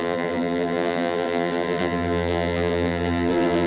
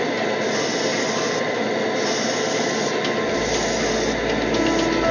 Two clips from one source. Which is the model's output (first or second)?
first